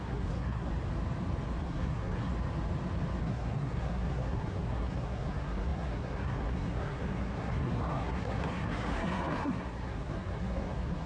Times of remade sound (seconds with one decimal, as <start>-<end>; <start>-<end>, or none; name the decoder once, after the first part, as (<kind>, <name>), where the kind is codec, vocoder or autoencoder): 0.0-0.7 (codec, SNAC); 1.6-2.3; 3.2-11.1

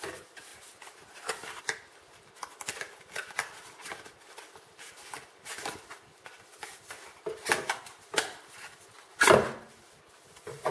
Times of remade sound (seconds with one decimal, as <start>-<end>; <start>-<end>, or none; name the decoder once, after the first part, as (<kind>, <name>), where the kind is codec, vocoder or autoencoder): 0.5-1.6 (vocoder, BigVGAN v2)

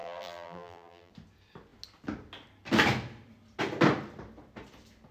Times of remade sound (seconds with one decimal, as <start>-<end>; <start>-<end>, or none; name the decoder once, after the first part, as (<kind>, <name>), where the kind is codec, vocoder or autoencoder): 0.0-1.1 (vocoder, BigVGAN v2)

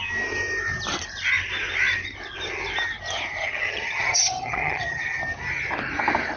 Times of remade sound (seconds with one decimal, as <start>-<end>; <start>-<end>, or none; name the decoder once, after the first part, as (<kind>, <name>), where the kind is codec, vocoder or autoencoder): 3.4-5.2 (vocoder, HiFi-GAN)

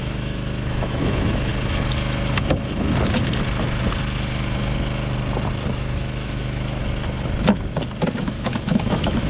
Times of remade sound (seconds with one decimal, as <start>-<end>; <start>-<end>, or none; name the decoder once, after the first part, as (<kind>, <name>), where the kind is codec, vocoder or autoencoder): 0.0-1.5 (autoencoder, DAC-VAE); 5.7-6.8; 8.2-9.3

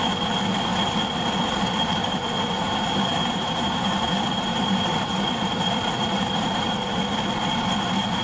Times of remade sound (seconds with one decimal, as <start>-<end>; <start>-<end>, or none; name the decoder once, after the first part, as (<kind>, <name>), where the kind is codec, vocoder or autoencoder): 2.0-6.7 (vocoder, BigVGAN v2)

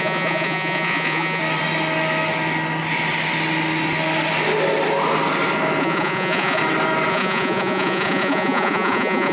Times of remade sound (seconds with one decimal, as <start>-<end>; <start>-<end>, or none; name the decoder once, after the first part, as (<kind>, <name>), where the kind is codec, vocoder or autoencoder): 0.0-1.4 (vocoder, Vocos); 5.8-6.6; 7.1-9.3

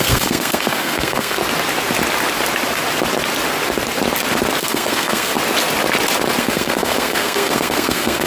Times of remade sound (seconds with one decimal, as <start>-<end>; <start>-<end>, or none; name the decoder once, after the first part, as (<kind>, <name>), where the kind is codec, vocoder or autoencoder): 0.0-1.4 (codec, SNAC); 4.6-5.3; 6.4-8.3